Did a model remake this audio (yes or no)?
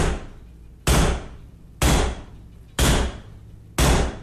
no